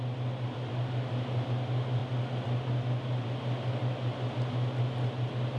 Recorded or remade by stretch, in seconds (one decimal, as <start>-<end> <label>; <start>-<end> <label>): 0.0-5.6 recorded